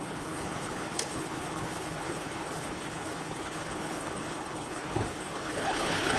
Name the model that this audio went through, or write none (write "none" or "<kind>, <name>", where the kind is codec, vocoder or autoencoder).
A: codec, HILCodec